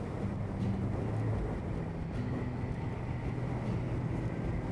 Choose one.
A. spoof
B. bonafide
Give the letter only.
B